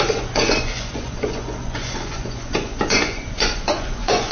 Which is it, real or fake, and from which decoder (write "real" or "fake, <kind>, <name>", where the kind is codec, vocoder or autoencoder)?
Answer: fake, vocoder, Vocos